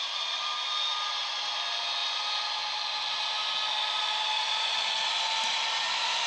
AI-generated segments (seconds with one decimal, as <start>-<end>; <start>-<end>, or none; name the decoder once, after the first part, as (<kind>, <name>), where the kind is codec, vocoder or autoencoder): none